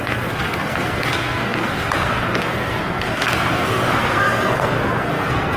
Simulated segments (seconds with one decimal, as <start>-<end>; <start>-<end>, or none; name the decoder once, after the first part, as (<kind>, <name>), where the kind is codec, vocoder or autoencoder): 0.0-5.6 (codec, SNAC)